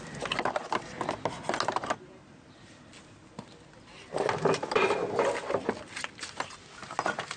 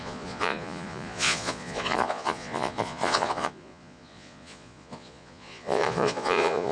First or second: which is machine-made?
second